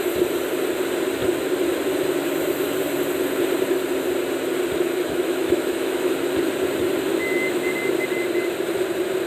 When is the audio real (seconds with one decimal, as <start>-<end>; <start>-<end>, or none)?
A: 0.0-5.0; 6.1-7.1; 7.8-9.3